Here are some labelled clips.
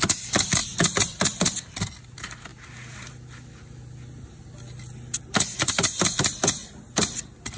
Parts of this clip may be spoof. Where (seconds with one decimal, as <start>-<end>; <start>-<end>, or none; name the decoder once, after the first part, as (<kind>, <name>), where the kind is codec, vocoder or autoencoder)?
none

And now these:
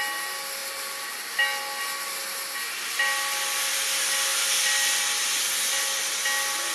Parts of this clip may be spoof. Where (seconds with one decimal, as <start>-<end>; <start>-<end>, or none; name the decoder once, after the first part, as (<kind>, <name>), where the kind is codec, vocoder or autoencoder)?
none

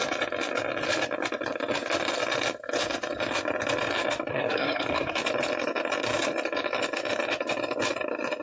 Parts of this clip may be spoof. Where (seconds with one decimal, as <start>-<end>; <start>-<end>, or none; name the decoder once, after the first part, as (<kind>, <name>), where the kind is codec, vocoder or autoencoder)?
4.3-5.2 (codec, SNAC)